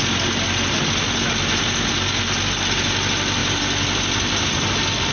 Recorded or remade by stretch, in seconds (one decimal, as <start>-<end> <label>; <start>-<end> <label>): 0.0-5.1 recorded